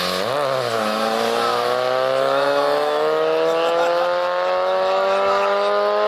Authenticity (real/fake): real